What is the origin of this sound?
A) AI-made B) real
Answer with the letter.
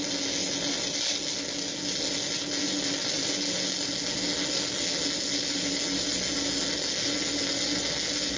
B